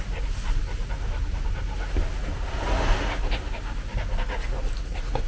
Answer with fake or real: real